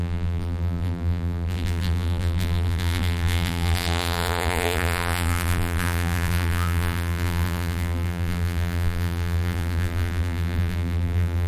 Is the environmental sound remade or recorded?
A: remade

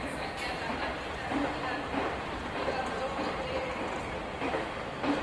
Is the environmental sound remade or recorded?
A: remade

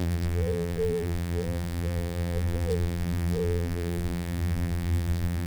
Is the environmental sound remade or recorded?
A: remade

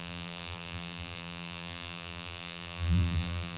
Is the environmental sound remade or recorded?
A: remade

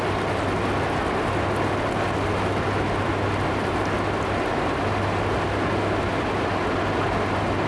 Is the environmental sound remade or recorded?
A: recorded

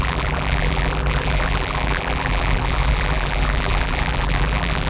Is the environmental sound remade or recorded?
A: remade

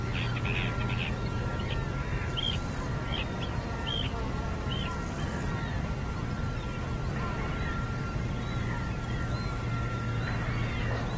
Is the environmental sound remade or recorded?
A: recorded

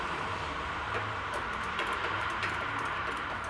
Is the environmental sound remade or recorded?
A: remade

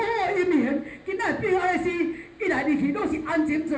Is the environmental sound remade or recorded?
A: recorded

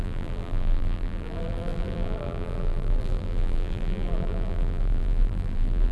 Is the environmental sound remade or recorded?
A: remade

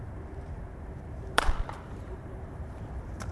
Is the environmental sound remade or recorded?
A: remade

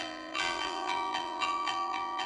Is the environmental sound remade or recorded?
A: remade